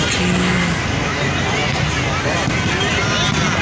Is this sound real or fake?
real